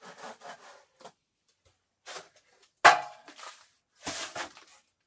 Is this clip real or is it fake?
real